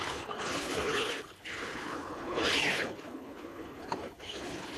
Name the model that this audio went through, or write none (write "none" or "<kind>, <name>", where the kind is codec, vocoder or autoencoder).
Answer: codec, HILCodec